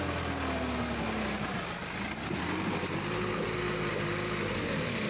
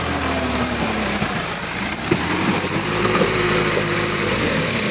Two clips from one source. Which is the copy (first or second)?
second